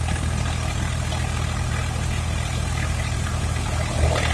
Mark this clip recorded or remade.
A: recorded